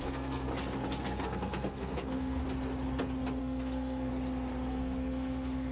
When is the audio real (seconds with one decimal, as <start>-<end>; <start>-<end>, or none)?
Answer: 0.5-1.0; 2.4-3.4; 4.1-4.7